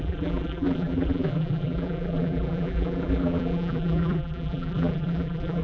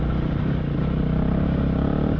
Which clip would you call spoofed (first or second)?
first